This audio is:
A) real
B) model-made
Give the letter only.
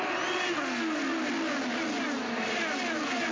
A